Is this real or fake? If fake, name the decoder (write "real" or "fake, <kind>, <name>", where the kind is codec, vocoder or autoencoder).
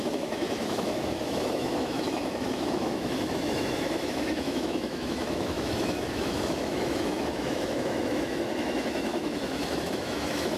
fake, autoencoder, DAC-VAE